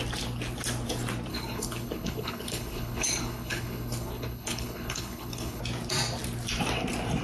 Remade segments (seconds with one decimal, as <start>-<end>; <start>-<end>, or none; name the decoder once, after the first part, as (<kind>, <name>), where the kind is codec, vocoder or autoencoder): 1.3-5.6 (codec, HILCodec)